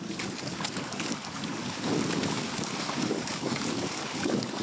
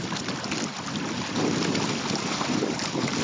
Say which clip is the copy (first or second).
first